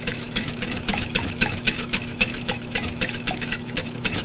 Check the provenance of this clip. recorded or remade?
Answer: remade